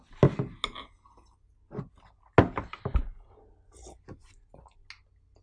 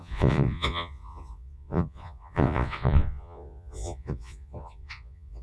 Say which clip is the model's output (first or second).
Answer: second